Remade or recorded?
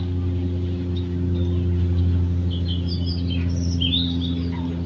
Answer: recorded